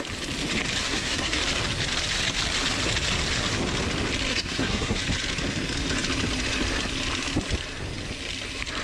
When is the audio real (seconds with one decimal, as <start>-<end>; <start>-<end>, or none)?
0.0-0.9; 1.4-4.3; 5.0-8.8